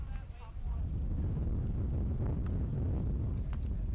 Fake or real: real